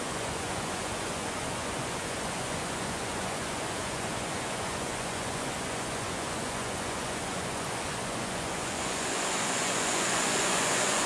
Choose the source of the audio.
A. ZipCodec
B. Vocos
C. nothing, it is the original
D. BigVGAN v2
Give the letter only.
B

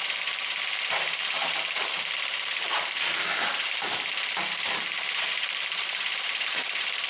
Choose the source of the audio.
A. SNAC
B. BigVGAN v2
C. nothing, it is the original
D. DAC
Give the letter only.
B